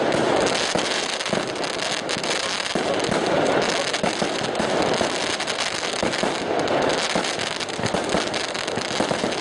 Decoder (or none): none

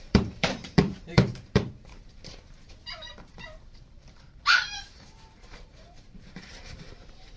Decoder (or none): vocoder, BigVGAN v2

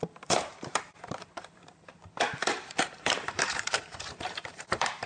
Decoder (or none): vocoder, BigVGAN v2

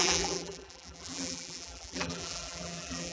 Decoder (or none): vocoder, BigVGAN v2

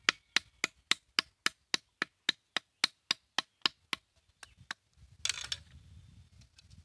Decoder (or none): none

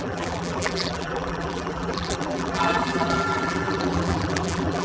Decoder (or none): vocoder, BigVGAN v2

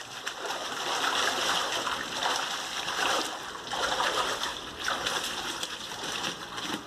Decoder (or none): none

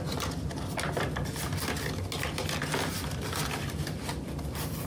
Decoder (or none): none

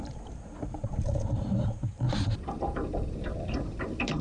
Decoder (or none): vocoder, BigVGAN v2